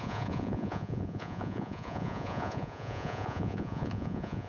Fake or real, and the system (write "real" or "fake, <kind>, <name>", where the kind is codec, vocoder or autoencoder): fake, vocoder, Vocos